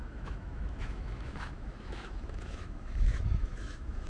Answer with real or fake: fake